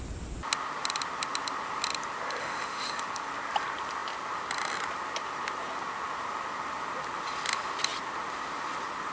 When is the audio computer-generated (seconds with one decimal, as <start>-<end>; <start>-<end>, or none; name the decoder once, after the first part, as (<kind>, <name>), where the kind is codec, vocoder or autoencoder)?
2.4-3.0 (autoencoder, DAC-VAE)